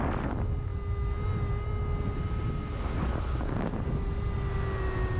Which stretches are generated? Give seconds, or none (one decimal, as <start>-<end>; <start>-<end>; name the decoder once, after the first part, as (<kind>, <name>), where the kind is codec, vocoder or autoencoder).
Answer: none